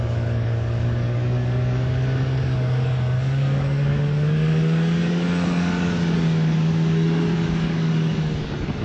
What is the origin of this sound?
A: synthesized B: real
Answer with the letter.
A